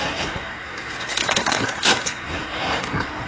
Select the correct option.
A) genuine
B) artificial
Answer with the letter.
B